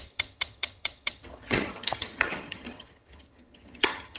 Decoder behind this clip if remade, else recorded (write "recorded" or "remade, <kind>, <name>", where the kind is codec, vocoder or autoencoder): remade, vocoder, HiFi-GAN